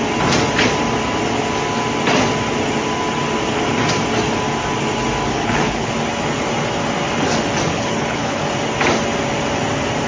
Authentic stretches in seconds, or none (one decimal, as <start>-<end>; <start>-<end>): 0.0-5.3; 5.9-7.7; 8.4-10.1

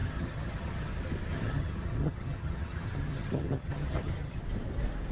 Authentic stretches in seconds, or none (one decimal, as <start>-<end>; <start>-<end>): 0.9-1.3; 4.4-5.1

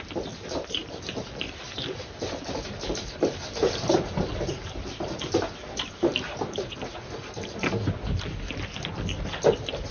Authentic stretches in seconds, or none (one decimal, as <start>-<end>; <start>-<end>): 0.0-9.9